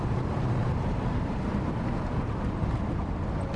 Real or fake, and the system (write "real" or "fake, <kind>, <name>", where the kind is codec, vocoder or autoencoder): real